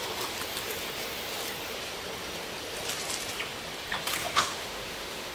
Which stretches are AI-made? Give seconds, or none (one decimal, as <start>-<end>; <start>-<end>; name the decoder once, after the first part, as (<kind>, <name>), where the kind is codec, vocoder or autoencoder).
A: 4.2-5.3 (autoencoder, DAC-VAE)